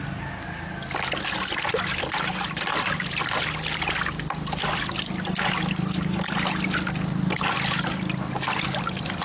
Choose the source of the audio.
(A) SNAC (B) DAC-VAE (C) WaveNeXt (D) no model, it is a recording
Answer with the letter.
D